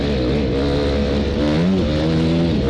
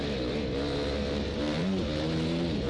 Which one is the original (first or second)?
first